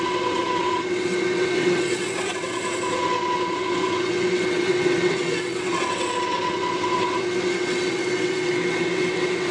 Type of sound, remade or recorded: remade